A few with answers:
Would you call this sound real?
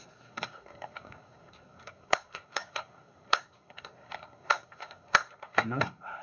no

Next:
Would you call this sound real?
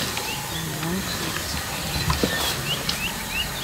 yes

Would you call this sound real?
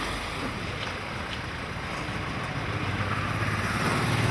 yes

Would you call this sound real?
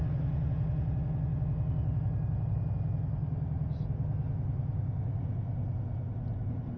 yes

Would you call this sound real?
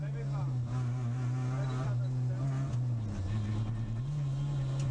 yes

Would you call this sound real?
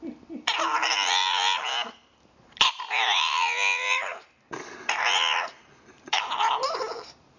yes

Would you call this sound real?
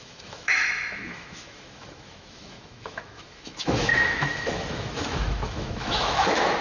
no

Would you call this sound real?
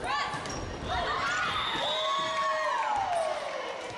yes